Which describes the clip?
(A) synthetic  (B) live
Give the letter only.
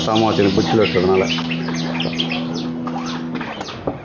B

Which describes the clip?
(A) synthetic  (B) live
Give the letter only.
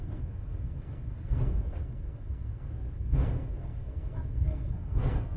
A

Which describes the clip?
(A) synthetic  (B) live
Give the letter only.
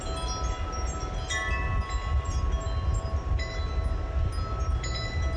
B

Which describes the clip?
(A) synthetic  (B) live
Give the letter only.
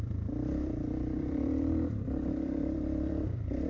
A